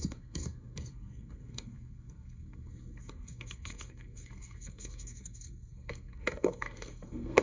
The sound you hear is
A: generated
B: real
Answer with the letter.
A